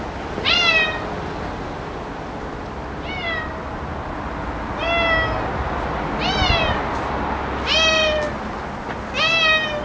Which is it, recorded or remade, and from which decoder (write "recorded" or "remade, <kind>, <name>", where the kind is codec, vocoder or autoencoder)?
recorded